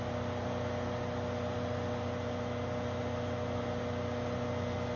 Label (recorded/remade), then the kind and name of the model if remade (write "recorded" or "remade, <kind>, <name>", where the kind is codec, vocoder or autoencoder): recorded